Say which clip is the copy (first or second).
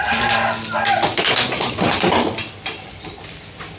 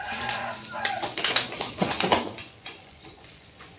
second